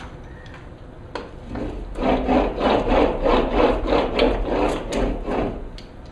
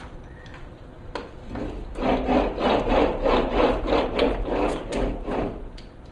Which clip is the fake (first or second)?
second